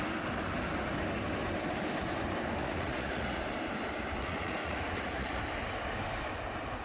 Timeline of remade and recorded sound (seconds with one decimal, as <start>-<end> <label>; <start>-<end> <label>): 0.0-2.6 recorded; 2.6-3.4 remade; 3.4-4.2 recorded; 4.2-5.4 remade; 5.4-6.8 recorded